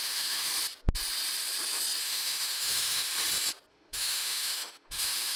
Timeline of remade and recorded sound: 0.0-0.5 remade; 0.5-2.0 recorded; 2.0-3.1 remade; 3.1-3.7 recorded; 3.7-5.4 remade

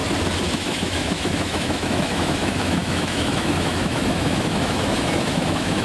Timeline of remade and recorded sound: 0.0-0.5 recorded; 0.5-5.8 remade

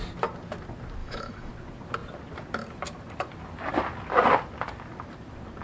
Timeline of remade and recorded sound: 0.0-1.0 recorded; 1.0-1.5 remade; 1.5-5.6 recorded

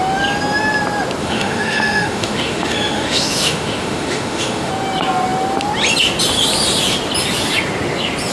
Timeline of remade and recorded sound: 0.0-1.2 recorded; 1.2-4.7 remade; 4.7-8.3 recorded

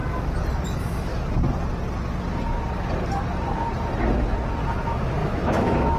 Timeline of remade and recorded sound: 0.0-0.6 recorded; 0.6-1.1 remade; 1.1-4.7 recorded; 4.7-6.0 remade